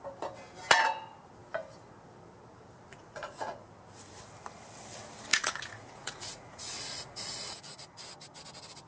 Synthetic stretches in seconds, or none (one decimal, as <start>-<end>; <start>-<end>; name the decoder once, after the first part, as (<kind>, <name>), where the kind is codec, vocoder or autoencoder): 2.9-3.7 (vocoder, Vocos); 5.3-7.9